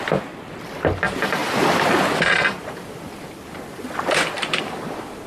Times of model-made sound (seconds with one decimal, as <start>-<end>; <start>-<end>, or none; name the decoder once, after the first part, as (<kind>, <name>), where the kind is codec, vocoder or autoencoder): none